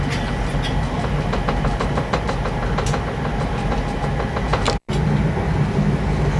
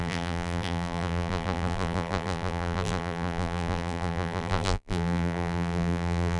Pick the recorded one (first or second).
first